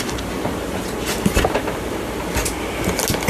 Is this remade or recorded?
recorded